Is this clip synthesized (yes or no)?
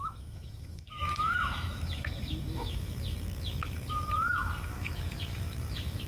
yes